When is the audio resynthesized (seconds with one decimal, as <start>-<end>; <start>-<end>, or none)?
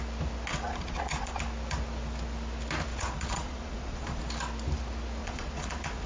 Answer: 0.5-1.4; 2.9-4.2; 5.2-6.1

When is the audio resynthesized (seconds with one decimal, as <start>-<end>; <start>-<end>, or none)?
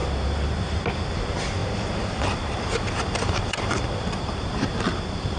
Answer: 1.6-4.8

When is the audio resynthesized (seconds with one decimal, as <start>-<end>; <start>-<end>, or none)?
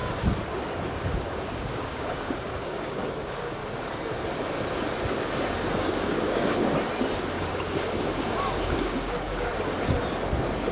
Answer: 0.9-3.6; 5.5-6.6; 7.4-9.5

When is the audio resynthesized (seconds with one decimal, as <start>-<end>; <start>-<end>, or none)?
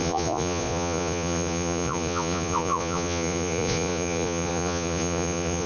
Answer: 0.0-5.7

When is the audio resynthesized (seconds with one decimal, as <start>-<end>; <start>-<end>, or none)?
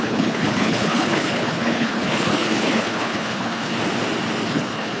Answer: 0.0-3.7; 4.5-5.0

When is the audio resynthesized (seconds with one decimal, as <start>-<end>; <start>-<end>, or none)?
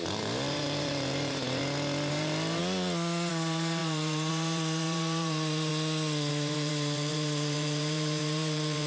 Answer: 0.0-1.6; 2.1-2.6; 3.3-5.7; 6.3-8.9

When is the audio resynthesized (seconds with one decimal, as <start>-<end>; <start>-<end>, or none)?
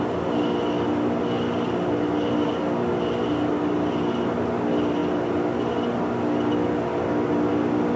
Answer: none